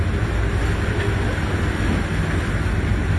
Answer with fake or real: real